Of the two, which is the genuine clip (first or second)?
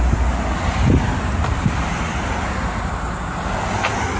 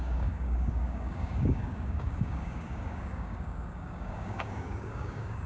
first